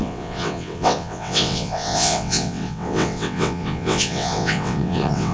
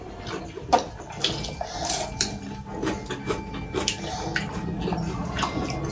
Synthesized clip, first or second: first